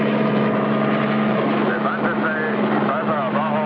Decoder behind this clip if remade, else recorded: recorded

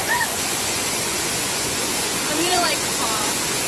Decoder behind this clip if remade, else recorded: remade, vocoder, Vocos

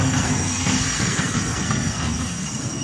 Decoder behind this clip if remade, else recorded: remade, codec, SNAC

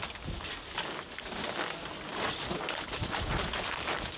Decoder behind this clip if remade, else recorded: recorded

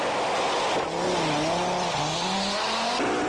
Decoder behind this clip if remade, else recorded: recorded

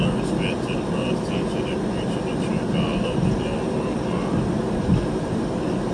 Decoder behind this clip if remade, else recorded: recorded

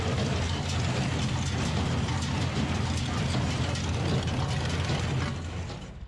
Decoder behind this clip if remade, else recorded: recorded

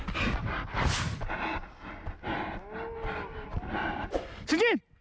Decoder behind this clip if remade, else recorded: recorded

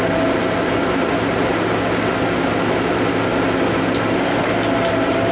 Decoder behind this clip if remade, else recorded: recorded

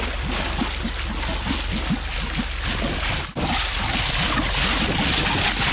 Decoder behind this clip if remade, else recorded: recorded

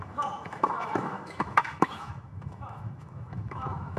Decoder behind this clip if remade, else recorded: remade, autoencoder, DAC-VAE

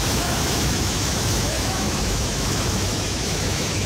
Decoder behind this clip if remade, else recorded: remade, autoencoder, DAC-VAE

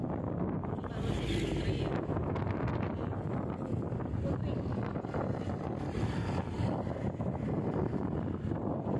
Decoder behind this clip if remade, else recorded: recorded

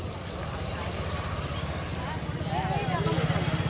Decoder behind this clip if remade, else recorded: recorded